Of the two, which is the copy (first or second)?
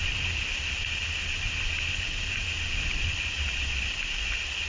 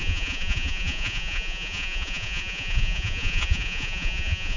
second